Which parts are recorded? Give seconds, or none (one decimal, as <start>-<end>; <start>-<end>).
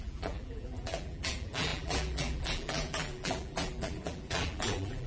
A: none